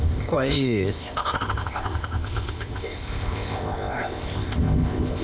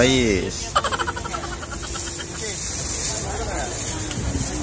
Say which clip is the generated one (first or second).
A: first